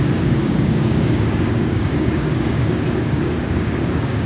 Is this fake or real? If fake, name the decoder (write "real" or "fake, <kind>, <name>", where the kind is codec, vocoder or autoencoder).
fake, codec, DAC